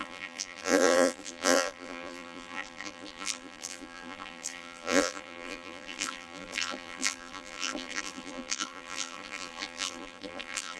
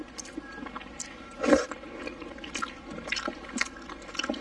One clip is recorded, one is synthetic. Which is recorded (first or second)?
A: second